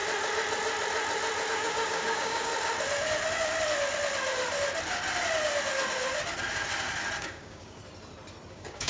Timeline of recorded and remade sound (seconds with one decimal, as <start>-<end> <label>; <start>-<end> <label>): 0.0-1.5 recorded; 1.5-2.5 remade; 2.5-7.2 recorded; 7.2-7.8 remade; 7.8-8.5 recorded; 8.5-8.9 remade